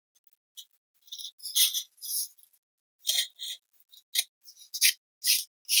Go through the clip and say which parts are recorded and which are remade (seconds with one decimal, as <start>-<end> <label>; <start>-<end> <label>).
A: 0.0-5.8 recorded